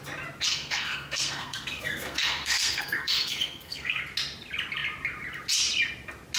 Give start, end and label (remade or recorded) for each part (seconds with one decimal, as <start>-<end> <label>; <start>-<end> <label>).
0.0-0.5 recorded; 0.5-4.0 remade; 4.0-6.4 recorded